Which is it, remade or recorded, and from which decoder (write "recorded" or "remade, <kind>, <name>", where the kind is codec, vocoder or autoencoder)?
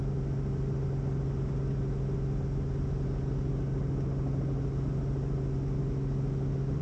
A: recorded